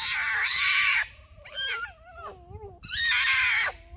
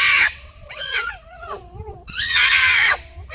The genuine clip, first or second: first